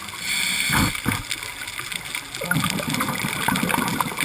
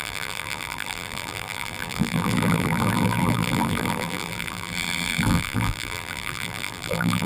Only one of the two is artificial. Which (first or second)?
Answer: second